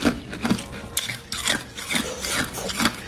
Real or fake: real